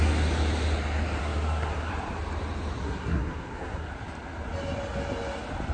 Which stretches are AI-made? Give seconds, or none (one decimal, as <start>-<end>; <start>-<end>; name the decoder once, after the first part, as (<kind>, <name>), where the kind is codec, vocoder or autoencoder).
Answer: 1.2-1.9 (codec, SNAC); 2.8-3.9